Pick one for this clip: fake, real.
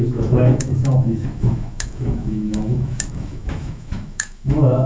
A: fake